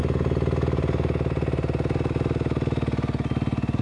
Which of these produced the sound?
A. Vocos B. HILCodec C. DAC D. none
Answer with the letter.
D